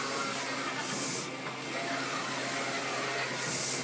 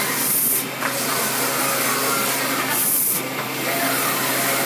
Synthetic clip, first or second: second